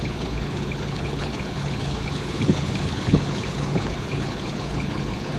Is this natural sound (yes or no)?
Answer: no